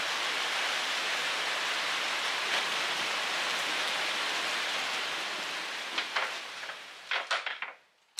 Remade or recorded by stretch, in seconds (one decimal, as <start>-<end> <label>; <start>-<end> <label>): 0.0-8.2 recorded